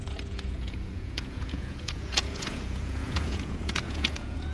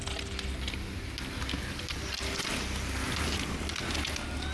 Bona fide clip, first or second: second